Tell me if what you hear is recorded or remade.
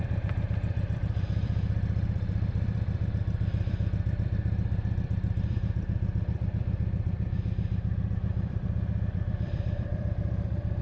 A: remade